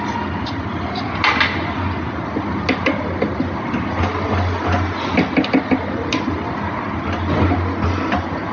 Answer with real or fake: real